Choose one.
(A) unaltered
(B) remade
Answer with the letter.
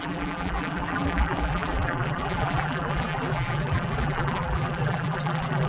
B